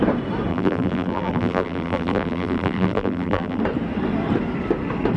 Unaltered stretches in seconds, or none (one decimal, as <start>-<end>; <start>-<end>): 0.0-0.5; 3.6-5.2